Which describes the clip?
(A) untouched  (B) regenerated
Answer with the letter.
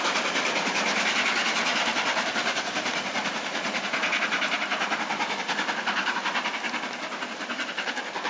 A